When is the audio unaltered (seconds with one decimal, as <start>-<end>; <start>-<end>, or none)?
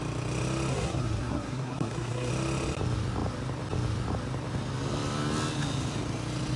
0.0-0.7; 2.3-6.6